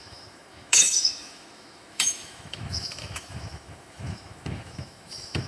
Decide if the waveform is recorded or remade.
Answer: remade